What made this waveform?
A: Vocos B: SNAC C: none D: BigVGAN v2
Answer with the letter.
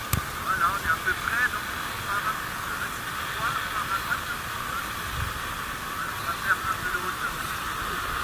C